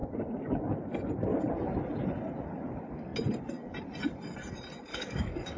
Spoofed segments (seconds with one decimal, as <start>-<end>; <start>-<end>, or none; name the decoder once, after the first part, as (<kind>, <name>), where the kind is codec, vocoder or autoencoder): 4.9-5.6 (codec, DAC)